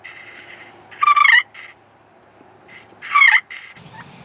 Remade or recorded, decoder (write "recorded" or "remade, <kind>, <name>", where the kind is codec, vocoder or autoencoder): recorded